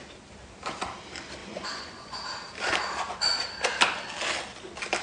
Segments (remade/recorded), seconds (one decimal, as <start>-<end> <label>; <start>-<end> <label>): 0.0-1.4 recorded; 1.4-2.2 remade; 2.2-5.0 recorded